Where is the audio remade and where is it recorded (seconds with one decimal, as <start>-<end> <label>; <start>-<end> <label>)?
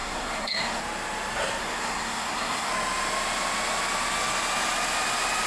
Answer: 0.0-0.8 remade; 0.8-1.6 recorded; 1.6-2.7 remade; 2.7-5.5 recorded